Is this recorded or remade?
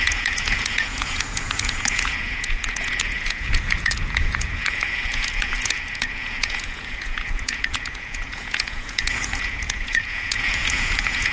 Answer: remade